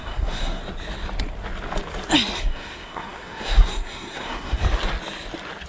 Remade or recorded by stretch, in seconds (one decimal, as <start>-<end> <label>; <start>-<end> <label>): 0.0-0.6 remade; 0.6-2.4 recorded; 2.4-4.6 remade; 4.6-5.7 recorded